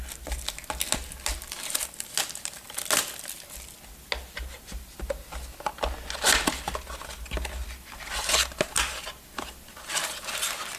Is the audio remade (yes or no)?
no